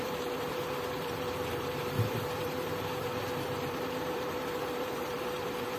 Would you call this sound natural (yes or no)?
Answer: no